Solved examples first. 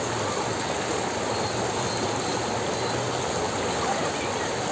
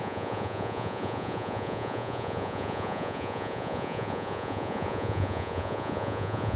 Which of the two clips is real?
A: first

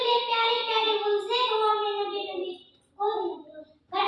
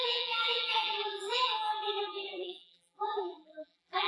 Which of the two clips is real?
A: first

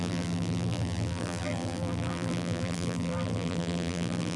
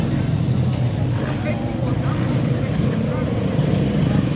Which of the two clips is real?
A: second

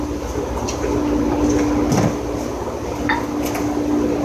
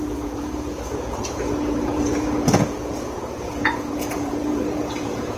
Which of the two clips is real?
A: first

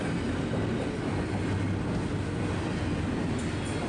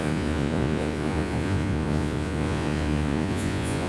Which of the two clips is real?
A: first